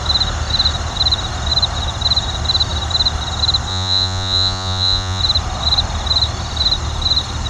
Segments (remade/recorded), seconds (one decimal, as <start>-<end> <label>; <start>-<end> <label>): 0.0-3.7 recorded; 3.7-5.2 remade; 5.2-7.5 recorded